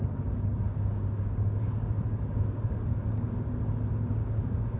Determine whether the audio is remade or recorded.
remade